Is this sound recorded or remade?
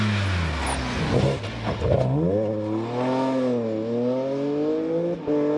recorded